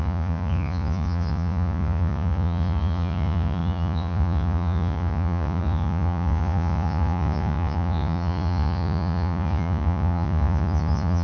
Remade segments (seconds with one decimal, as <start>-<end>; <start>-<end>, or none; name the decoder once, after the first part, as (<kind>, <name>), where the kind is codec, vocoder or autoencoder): 0.0-11.2 (vocoder, Vocos)